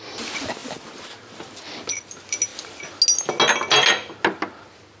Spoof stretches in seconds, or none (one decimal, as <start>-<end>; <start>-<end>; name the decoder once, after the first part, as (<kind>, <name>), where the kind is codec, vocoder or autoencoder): none